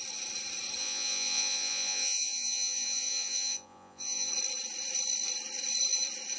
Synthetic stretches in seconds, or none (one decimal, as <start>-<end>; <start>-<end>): 0.8-4.3